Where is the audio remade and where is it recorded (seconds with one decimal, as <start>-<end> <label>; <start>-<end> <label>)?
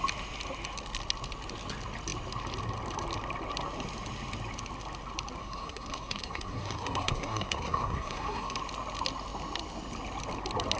0.0-5.4 recorded; 5.4-8.6 remade; 8.6-10.8 recorded